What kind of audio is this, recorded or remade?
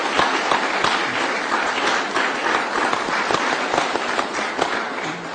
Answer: recorded